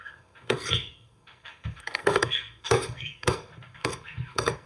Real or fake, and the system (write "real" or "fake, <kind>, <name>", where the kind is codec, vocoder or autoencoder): fake, codec, SNAC